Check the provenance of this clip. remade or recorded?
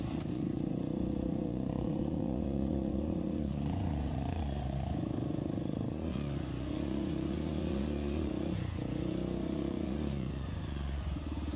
remade